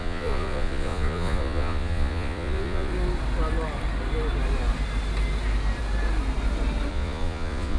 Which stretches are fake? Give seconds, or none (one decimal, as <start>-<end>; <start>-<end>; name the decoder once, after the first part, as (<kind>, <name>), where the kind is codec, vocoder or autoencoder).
0.0-2.9 (vocoder, Vocos); 6.9-7.8